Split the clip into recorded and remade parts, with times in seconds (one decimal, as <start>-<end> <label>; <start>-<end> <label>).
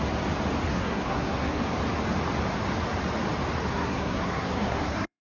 0.0-0.7 recorded; 0.7-1.6 remade; 1.6-3.7 recorded; 3.7-5.2 remade